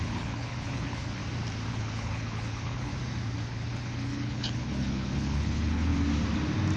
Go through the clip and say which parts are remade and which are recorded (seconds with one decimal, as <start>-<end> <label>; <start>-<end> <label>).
0.0-1.2 remade; 1.2-1.7 recorded; 1.7-2.9 remade; 2.9-3.5 recorded; 3.5-5.9 remade; 5.9-6.8 recorded